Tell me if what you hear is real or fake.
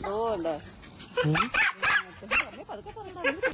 real